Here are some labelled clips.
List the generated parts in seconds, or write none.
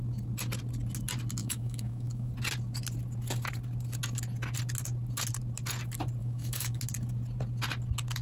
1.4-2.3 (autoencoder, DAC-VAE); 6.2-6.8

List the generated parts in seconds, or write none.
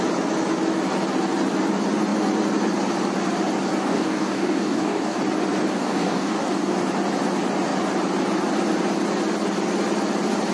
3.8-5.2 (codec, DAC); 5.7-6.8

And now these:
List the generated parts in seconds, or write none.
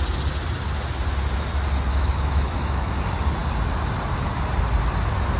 1.9-3.0 (autoencoder, DAC-VAE)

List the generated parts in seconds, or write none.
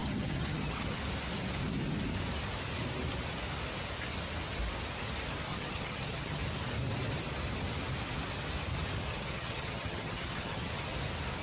0.0-1.0 (vocoder, HiFi-GAN); 5.5-6.4; 9.1-10.7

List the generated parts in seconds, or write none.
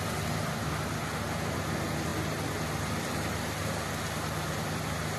none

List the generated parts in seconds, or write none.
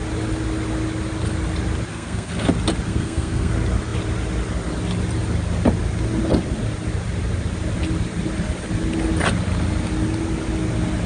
1.9-2.5 (codec, SNAC); 2.9-3.5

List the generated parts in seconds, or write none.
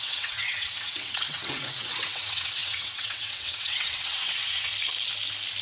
0.0-4.7 (vocoder, WaveNeXt)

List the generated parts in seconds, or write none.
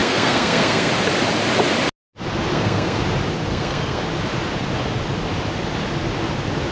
0.0-0.9 (codec, SNAC); 2.5-3.0; 3.5-4.0